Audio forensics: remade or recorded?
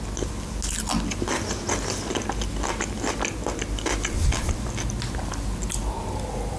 recorded